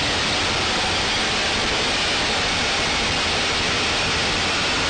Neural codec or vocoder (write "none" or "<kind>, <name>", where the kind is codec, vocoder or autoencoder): none